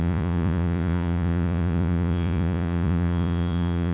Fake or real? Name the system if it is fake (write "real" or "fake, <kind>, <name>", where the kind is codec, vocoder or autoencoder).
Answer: fake, vocoder, Vocos